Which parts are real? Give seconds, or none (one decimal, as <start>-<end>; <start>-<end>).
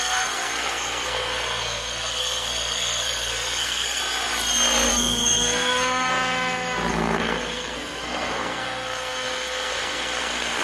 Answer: 4.0-4.9; 6.1-6.9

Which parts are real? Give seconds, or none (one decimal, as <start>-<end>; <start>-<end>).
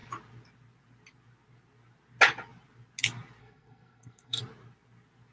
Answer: 0.0-3.4; 4.4-5.3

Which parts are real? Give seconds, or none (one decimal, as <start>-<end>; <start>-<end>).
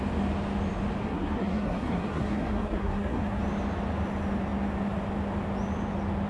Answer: 0.0-1.0; 3.4-6.3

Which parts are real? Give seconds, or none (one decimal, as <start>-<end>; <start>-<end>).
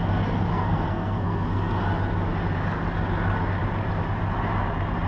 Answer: 0.0-0.5; 1.8-5.1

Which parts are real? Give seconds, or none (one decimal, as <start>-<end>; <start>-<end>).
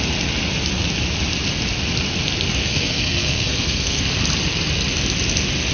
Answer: 0.0-2.6; 4.0-5.7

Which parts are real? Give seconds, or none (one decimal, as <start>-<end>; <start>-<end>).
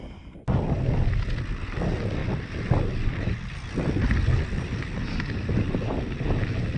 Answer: 0.0-6.8